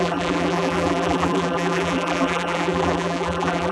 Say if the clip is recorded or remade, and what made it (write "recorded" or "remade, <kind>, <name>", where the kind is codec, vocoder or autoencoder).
remade, vocoder, BigVGAN v2